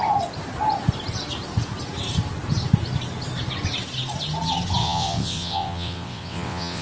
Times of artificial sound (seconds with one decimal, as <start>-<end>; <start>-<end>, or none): 4.8-6.8